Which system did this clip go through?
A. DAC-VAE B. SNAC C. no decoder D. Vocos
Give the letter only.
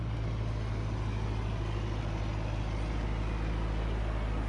C